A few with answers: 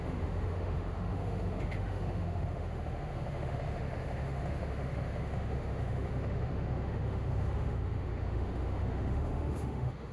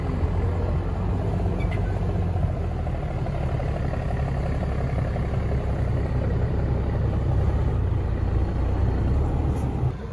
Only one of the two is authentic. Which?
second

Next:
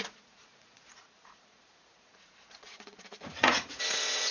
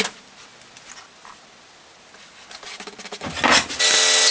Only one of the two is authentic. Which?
second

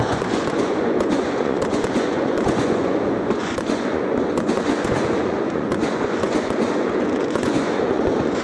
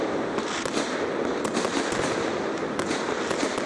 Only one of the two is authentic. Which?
second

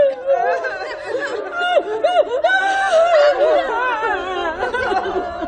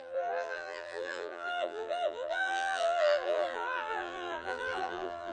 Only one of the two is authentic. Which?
first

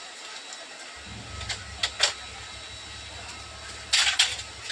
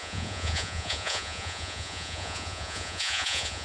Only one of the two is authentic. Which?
first